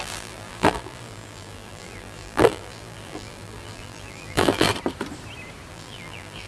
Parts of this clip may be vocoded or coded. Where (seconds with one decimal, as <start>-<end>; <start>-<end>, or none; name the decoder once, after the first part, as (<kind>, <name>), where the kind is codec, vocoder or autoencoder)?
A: 0.0-4.7 (vocoder, BigVGAN v2); 5.7-6.5